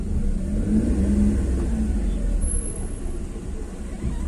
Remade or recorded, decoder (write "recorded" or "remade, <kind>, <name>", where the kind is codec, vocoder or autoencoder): recorded